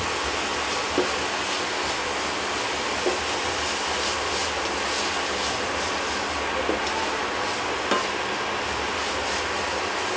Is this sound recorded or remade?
recorded